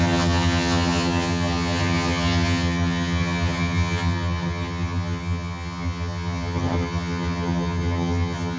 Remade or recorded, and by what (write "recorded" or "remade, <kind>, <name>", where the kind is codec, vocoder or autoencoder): remade, vocoder, HiFi-GAN